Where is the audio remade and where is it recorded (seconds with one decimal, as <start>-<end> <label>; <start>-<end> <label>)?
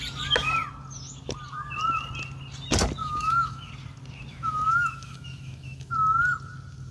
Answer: 0.0-3.0 recorded; 3.0-3.7 remade; 3.7-4.3 recorded; 4.3-5.9 remade; 5.9-6.9 recorded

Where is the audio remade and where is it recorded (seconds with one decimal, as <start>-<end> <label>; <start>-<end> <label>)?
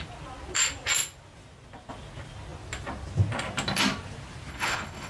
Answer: 0.0-4.5 recorded; 4.5-5.1 remade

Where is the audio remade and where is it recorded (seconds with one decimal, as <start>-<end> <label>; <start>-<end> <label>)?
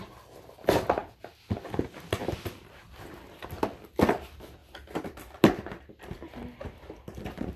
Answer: 0.0-7.6 recorded